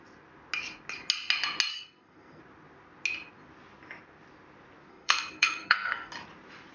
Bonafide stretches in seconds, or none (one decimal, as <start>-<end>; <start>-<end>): 0.0-1.7; 2.4-4.9; 6.1-6.7